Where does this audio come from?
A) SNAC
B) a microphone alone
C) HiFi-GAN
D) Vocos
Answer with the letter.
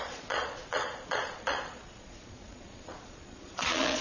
D